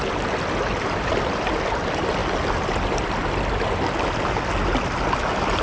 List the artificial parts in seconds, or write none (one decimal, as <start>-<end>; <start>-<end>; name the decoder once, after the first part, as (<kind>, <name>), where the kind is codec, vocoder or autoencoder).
none